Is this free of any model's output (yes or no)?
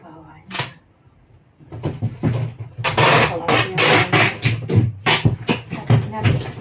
yes